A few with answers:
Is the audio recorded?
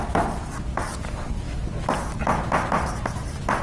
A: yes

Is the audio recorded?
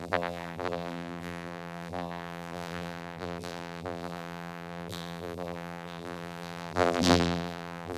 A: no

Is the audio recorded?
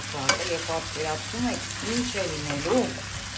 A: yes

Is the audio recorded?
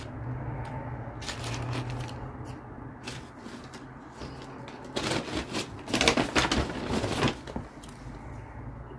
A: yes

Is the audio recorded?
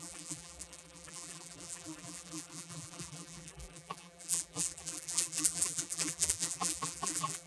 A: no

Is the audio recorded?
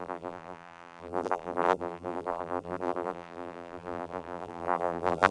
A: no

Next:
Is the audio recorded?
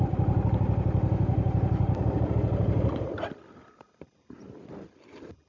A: yes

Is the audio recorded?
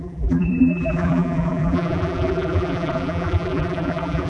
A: no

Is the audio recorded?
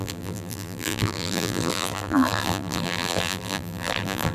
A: no